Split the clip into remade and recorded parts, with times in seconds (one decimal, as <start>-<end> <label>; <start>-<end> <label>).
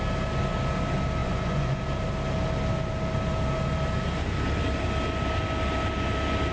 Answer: 0.0-1.2 recorded; 1.2-1.8 remade; 1.8-6.5 recorded